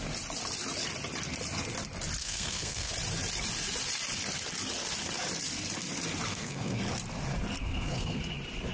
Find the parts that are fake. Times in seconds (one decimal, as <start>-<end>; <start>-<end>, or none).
2.2-2.9; 6.3-6.8; 7.6-8.2